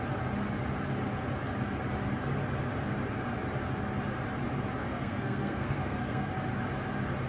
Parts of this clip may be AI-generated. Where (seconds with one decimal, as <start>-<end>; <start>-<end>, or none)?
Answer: 4.8-6.3